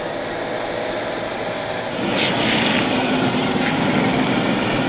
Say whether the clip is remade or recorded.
recorded